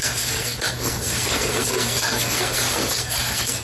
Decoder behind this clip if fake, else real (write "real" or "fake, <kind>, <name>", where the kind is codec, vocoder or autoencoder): fake, codec, SNAC